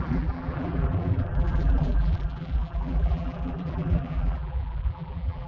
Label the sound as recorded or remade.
remade